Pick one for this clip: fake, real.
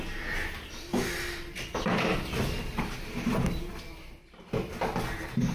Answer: real